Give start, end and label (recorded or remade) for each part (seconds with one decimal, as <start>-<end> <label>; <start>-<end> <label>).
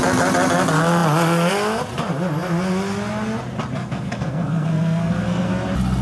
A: 0.0-3.8 recorded; 3.8-5.5 remade; 5.5-6.0 recorded